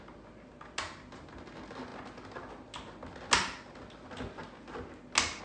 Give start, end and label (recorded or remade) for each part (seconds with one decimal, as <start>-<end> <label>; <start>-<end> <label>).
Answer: 0.0-5.4 recorded